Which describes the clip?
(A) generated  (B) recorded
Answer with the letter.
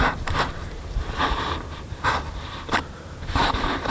A